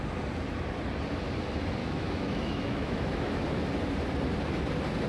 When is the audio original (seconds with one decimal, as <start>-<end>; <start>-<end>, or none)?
0.0-1.8; 3.7-5.1